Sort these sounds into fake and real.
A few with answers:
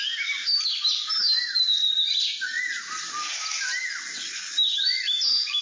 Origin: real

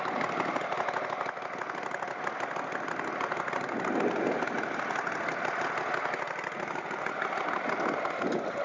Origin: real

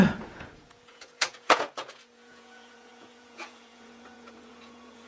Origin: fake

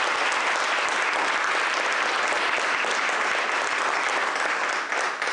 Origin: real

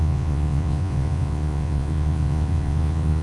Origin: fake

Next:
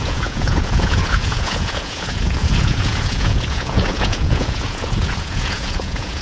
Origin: fake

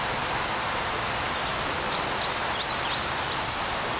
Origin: real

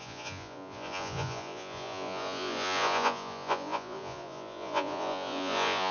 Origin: fake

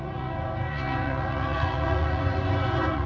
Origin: fake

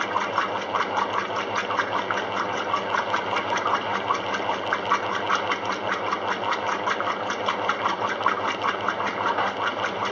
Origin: real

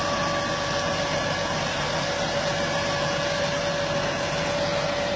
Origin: real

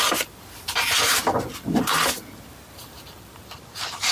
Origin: real